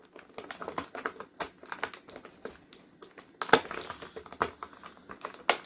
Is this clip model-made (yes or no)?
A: no